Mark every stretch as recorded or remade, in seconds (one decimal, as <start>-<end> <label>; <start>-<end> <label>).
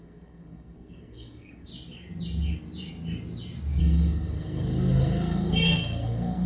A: 0.0-1.7 remade; 1.7-3.8 recorded; 3.8-6.5 remade